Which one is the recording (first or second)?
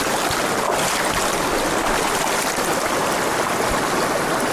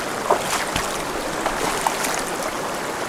first